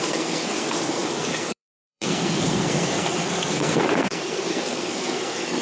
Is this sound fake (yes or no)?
yes